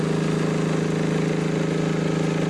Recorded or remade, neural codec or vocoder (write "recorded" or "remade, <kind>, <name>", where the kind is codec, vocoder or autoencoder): recorded